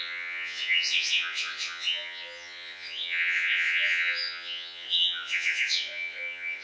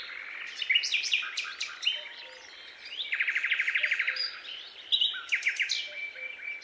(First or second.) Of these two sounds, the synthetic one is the first